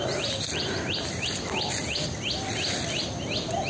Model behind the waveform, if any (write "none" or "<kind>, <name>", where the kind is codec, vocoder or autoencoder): none